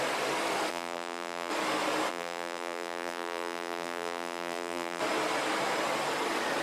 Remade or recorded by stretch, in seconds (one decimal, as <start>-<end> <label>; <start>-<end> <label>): 0.0-0.7 recorded; 0.7-1.5 remade; 1.5-2.1 recorded; 2.1-5.0 remade; 5.0-6.6 recorded